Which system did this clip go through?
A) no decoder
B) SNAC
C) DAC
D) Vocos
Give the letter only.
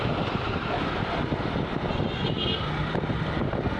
A